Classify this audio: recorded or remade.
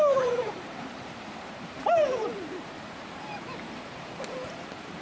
remade